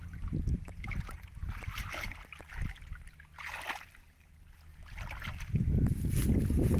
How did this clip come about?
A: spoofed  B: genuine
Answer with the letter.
B